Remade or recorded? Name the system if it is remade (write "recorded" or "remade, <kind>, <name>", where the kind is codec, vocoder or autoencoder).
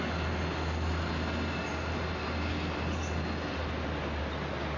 recorded